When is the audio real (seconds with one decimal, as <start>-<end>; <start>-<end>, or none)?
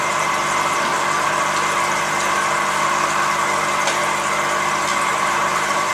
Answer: 0.0-4.9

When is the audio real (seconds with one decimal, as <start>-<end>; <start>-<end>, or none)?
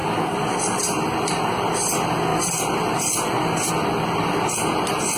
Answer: 1.9-2.3; 3.7-5.2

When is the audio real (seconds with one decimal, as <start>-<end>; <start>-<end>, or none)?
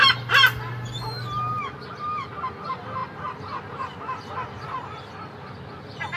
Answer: 0.0-6.2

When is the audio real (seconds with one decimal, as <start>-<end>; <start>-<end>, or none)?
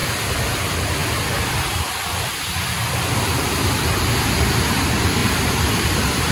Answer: 0.6-1.0; 4.8-5.2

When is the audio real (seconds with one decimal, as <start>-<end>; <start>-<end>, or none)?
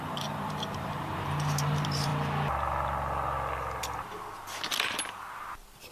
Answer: 2.1-5.9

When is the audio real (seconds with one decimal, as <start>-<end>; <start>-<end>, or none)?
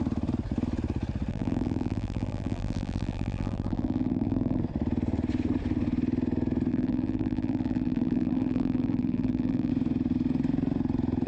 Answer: 0.0-1.3; 4.6-6.7; 9.7-11.3